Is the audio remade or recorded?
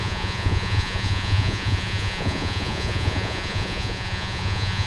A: remade